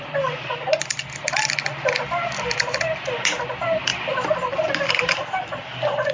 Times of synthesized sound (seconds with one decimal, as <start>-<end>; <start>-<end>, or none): none

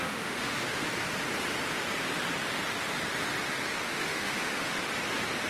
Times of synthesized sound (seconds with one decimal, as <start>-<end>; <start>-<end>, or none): 0.0-0.9; 3.8-4.8

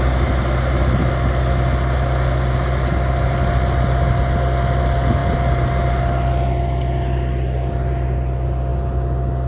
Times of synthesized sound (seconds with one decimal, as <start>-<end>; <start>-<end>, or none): none

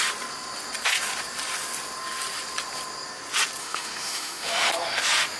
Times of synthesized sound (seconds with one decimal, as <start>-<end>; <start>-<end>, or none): 3.6-4.7

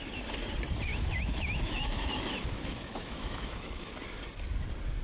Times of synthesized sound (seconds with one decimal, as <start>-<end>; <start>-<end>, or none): 0.9-3.9

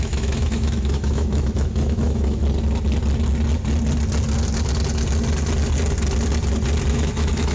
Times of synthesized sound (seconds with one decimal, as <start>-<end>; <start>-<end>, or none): 0.0-2.4; 6.9-7.5